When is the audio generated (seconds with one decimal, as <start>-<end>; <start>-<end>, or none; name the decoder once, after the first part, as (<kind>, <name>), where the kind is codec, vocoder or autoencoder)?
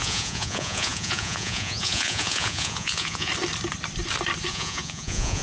0.0-3.3 (vocoder, Vocos); 4.5-5.4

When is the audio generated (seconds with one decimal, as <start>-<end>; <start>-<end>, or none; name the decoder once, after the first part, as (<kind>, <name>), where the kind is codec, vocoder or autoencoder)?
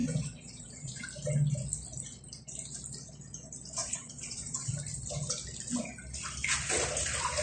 0.0-1.0 (vocoder, Vocos); 3.8-4.7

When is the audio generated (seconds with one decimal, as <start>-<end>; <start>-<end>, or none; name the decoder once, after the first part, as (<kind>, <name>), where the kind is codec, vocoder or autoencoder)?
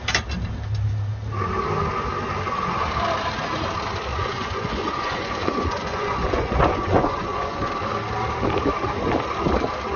4.1-7.7 (vocoder, Vocos)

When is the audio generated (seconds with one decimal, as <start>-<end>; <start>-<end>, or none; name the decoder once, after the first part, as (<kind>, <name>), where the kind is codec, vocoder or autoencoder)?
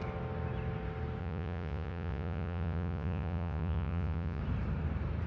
1.2-4.4 (vocoder, Vocos)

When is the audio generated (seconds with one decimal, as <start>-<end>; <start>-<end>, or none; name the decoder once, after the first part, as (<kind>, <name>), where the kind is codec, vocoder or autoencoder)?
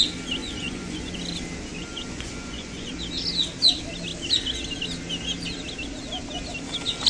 0.4-1.2 (vocoder, Vocos); 1.7-2.9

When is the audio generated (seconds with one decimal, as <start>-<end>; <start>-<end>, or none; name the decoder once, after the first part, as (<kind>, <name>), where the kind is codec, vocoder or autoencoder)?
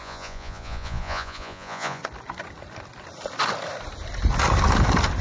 0.0-2.0 (vocoder, Vocos)